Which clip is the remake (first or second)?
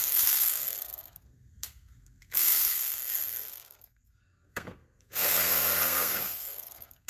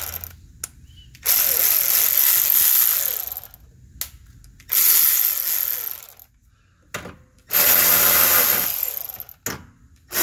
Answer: first